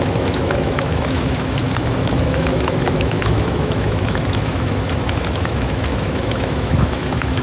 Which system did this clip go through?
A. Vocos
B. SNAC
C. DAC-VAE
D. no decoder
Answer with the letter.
C